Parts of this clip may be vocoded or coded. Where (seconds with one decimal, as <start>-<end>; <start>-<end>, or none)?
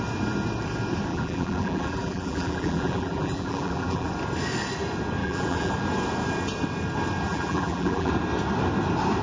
1.1-4.1; 5.2-5.7; 7.3-8.1